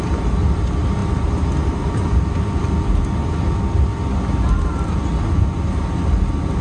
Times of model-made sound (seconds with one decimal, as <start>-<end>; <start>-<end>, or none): none